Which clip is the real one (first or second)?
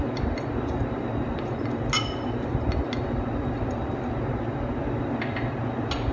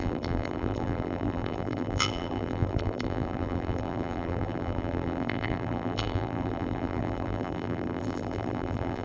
first